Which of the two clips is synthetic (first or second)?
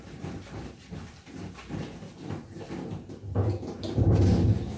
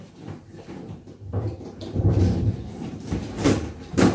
second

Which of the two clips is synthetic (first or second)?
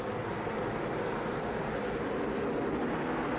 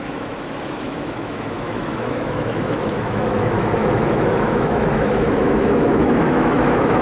second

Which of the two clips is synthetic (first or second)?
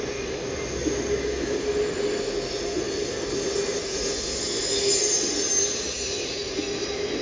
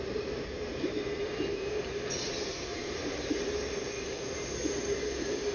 second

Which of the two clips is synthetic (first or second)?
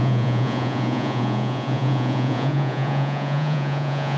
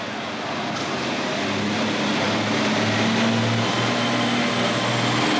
first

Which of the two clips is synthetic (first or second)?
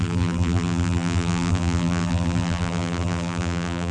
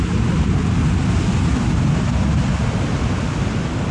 first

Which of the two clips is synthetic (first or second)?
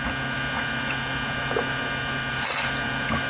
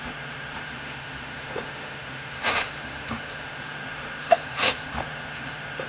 second